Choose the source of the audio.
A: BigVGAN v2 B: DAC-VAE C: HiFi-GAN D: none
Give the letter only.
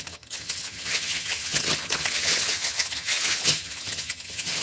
C